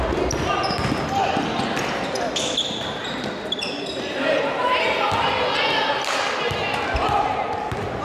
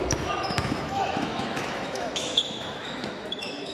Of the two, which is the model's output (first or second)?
second